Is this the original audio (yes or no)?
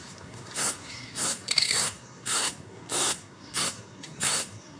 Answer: no